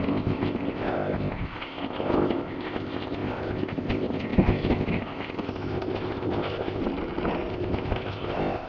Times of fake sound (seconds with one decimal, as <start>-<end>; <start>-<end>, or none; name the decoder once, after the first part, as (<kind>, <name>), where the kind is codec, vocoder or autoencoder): 0.0-6.8 (codec, ZipCodec); 7.5-8.7